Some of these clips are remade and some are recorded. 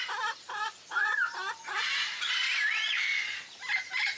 recorded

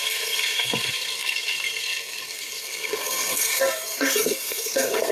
remade